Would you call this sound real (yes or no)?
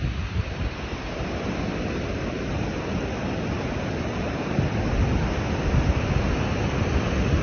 yes